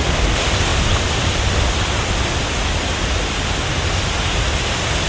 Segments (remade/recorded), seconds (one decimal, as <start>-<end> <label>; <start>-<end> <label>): 0.0-5.1 recorded